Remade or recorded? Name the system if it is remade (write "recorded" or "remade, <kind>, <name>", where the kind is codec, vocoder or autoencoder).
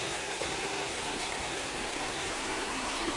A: remade, codec, SNAC